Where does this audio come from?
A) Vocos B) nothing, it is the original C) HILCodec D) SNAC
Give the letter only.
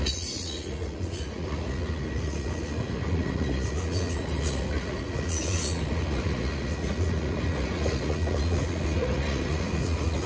A